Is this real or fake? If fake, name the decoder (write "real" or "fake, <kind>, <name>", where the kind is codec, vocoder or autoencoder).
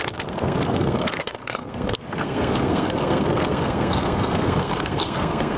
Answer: fake, codec, SNAC